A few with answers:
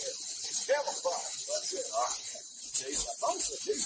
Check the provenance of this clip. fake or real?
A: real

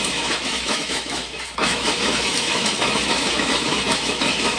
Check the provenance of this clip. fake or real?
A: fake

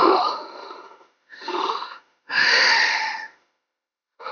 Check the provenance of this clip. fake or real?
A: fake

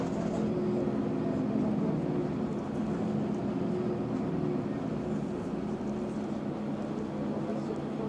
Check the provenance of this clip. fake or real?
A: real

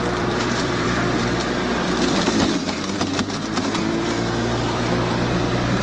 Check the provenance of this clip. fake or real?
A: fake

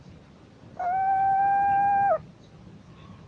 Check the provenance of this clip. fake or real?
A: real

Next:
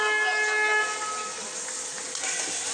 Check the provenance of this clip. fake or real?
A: real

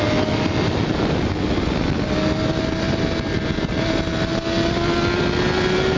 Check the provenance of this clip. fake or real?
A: real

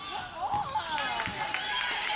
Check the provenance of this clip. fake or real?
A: real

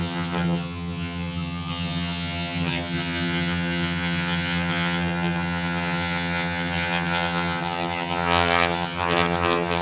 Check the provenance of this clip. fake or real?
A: fake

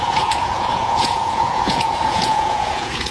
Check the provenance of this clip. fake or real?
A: fake